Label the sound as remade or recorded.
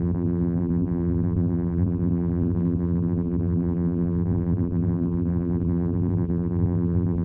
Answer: remade